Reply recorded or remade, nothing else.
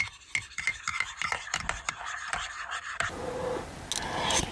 recorded